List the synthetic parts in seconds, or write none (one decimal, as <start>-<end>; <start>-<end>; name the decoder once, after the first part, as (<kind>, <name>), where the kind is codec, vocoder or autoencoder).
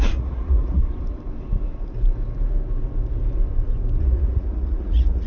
0.0-0.8 (vocoder, Vocos); 4.0-5.3